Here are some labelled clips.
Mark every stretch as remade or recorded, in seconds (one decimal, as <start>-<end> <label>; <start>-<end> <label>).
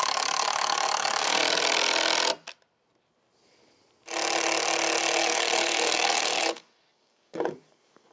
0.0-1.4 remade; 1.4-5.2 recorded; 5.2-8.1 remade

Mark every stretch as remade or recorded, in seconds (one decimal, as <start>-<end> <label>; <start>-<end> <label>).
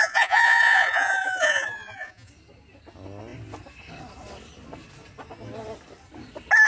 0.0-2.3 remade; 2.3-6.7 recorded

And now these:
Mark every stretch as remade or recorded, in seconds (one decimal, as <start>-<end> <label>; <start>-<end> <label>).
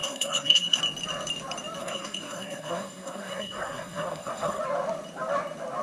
0.0-0.8 remade; 0.8-1.8 recorded; 1.8-4.6 remade; 4.6-5.8 recorded